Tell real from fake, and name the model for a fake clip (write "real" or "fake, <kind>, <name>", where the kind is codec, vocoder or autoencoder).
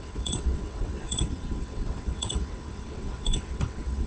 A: fake, vocoder, WaveNeXt